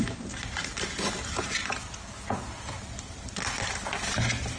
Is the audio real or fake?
real